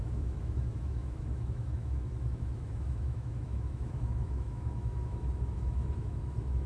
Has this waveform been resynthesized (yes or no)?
yes